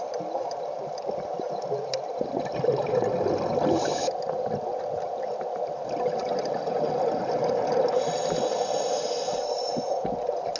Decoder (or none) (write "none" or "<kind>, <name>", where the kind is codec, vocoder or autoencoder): none